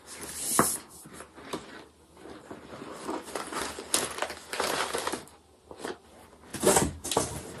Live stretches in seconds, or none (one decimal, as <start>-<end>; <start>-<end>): 0.0-7.6

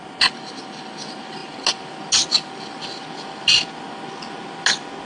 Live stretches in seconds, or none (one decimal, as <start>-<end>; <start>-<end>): 0.0-5.0